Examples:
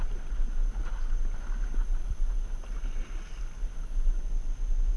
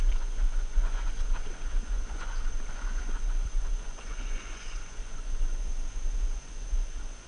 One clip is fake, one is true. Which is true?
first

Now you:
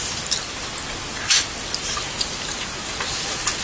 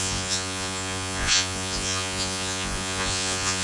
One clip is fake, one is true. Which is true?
first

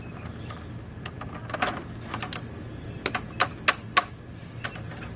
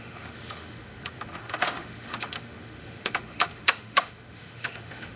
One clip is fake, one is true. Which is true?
first